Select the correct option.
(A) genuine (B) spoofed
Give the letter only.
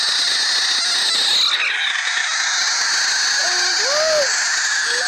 A